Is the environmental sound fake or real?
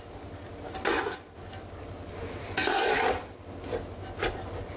real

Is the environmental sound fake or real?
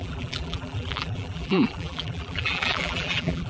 fake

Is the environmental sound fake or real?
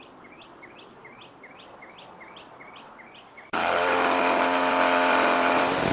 fake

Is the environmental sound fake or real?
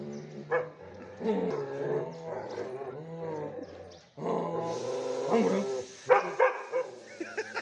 real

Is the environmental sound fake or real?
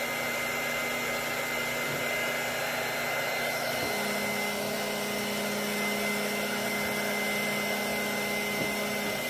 real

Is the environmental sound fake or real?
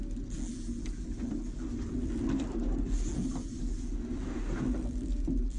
real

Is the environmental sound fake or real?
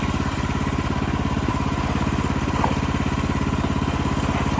real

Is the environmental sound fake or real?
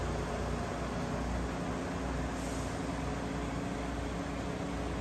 real